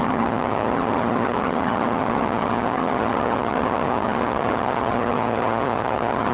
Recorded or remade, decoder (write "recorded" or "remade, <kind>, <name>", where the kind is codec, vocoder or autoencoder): remade, vocoder, HiFi-GAN